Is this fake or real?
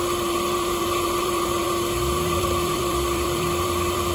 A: fake